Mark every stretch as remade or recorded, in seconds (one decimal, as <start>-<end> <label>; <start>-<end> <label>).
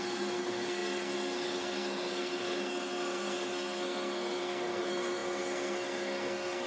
0.0-6.7 remade